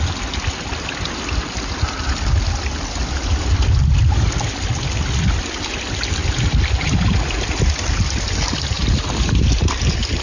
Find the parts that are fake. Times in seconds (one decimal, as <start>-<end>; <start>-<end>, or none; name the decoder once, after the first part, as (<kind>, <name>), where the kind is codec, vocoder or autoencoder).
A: none